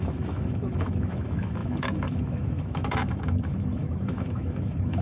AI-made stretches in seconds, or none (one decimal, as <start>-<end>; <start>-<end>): 0.0-5.0

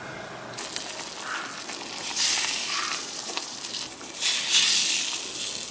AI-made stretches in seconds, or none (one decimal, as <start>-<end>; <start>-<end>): 2.0-4.3

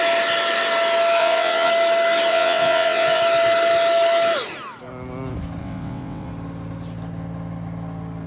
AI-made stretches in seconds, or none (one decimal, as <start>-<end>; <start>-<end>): 1.2-1.7; 2.3-3.2; 5.6-6.3

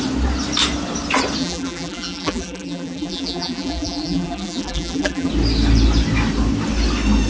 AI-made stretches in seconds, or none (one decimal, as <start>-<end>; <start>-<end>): 1.4-5.3

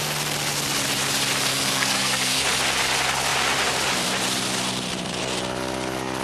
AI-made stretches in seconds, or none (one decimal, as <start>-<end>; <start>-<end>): 1.5-2.4

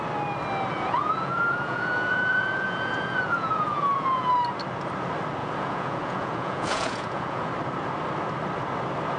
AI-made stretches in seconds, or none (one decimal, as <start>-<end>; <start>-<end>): 0.7-4.3; 5.4-7.5